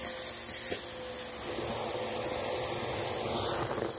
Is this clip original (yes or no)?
yes